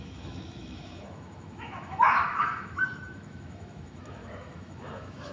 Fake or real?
fake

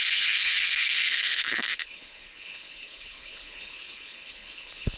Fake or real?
fake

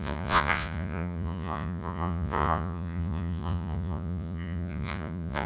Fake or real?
fake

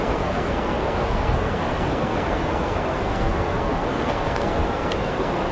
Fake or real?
fake